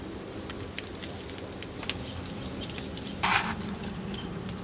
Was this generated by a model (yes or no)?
no